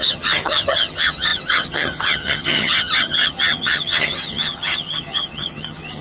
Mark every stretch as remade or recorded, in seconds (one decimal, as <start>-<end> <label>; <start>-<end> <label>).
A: 0.0-6.0 remade